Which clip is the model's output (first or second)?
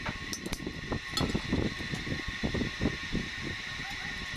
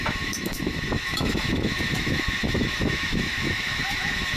second